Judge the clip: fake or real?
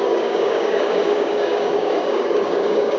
fake